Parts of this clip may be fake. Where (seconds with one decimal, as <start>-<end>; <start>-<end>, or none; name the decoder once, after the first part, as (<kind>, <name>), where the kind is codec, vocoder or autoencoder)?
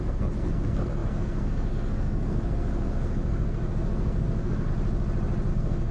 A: 0.0-4.7 (codec, SNAC); 5.5-5.9